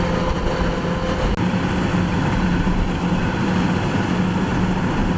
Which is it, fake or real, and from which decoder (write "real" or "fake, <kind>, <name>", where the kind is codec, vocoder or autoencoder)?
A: real